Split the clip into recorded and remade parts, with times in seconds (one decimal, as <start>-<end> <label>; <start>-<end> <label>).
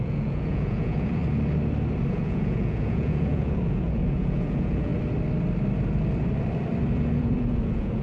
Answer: 0.0-1.2 remade; 1.2-2.1 recorded; 2.1-4.9 remade; 4.9-7.1 recorded; 7.1-8.0 remade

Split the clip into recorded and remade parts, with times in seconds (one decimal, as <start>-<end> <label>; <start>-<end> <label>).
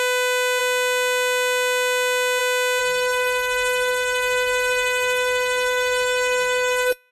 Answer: 0.0-2.8 recorded; 2.8-7.1 remade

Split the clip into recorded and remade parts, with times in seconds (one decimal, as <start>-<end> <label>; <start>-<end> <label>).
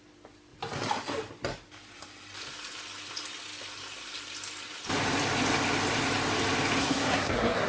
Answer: 0.0-6.8 recorded; 6.8-7.7 remade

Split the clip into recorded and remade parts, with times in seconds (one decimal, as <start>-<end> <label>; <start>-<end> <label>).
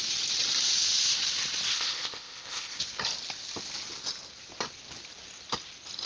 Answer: 0.0-1.7 recorded; 1.7-2.8 remade; 2.8-6.1 recorded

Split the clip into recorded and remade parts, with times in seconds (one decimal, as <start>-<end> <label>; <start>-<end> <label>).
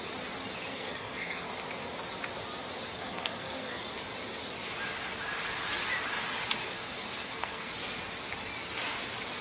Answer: 0.0-0.7 recorded; 0.7-1.5 remade; 1.5-3.0 recorded; 3.0-3.8 remade; 3.8-6.6 recorded; 6.6-7.7 remade; 7.7-9.4 recorded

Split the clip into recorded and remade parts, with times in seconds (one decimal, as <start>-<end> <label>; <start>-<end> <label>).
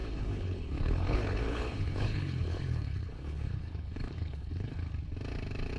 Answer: 0.0-4.7 remade; 4.7-5.8 recorded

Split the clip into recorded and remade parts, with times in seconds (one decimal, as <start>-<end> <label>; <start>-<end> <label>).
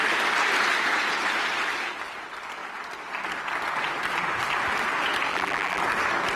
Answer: 0.0-5.3 recorded; 5.3-5.8 remade; 5.8-6.4 recorded